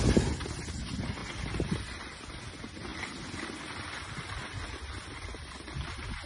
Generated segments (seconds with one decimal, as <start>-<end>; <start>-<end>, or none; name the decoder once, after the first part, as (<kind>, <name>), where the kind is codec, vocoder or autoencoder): 1.2-1.8 (vocoder, BigVGAN v2)